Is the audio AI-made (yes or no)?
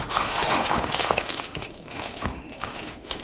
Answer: yes